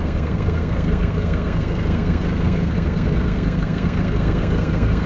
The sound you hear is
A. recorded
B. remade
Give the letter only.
B